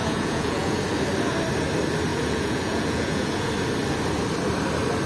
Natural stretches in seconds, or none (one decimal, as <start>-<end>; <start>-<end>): 0.8-2.1; 3.5-5.1